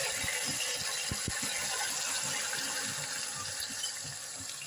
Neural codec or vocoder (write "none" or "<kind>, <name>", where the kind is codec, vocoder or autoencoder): none